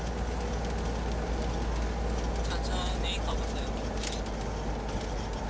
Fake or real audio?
real